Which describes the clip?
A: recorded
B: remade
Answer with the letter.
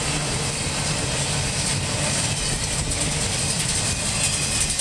A